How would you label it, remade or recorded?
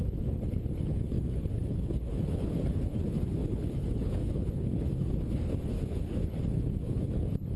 remade